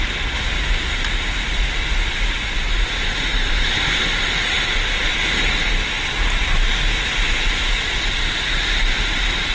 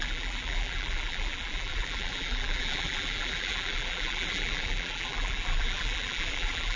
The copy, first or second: second